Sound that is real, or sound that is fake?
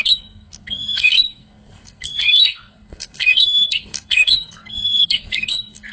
fake